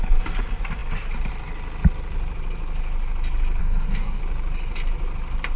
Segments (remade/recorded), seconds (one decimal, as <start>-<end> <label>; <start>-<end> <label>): 0.0-3.6 recorded; 3.6-4.2 remade; 4.2-5.6 recorded